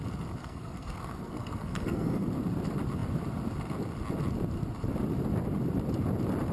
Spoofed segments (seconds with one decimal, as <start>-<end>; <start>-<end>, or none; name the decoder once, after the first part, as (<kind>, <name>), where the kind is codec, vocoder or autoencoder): 0.4-2.3 (codec, SNAC)